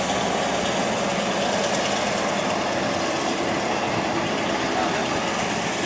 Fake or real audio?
real